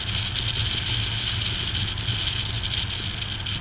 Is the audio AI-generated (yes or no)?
no